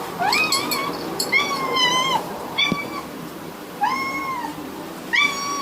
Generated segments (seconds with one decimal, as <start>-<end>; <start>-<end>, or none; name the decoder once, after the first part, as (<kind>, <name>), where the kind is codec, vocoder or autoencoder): 0.8-4.2 (vocoder, BigVGAN v2)